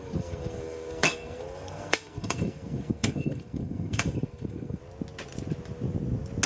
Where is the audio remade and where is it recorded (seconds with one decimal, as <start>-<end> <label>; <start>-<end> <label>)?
0.0-4.8 remade; 4.8-6.5 recorded